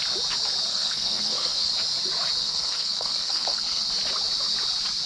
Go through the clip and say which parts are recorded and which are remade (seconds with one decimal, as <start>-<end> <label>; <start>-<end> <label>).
0.0-0.7 recorded; 0.7-1.7 remade; 1.7-2.4 recorded; 2.4-3.9 remade; 3.9-5.1 recorded